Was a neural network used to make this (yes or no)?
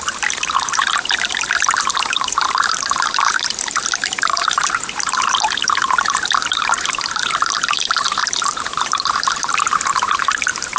yes